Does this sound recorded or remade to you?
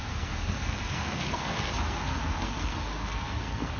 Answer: remade